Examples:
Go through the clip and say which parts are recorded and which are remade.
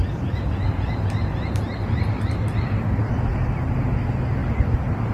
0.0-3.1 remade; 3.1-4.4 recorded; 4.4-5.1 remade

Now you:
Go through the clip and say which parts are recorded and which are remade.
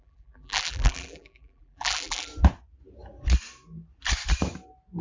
0.0-2.3 remade; 2.3-5.0 recorded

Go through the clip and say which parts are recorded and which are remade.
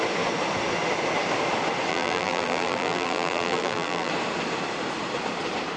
0.0-1.9 recorded; 1.9-4.1 remade; 4.1-5.8 recorded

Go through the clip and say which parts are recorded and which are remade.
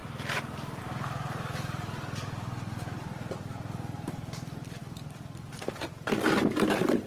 0.0-4.8 recorded; 4.8-5.8 remade; 5.8-7.1 recorded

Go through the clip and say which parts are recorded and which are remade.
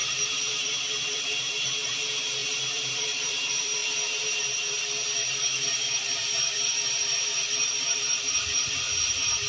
0.0-9.5 remade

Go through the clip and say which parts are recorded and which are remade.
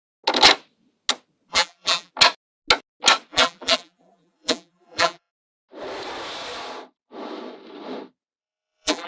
0.0-1.5 recorded; 1.5-2.1 remade; 2.1-3.3 recorded; 3.3-5.3 remade; 5.3-8.4 recorded; 8.4-9.1 remade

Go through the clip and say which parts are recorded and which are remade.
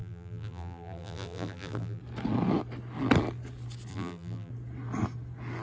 0.0-2.0 remade; 2.0-3.9 recorded; 3.9-4.5 remade; 4.5-5.6 recorded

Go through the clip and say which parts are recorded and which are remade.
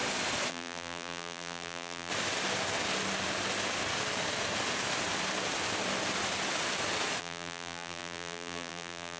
0.0-0.5 recorded; 0.5-2.1 remade; 2.1-7.2 recorded; 7.2-9.2 remade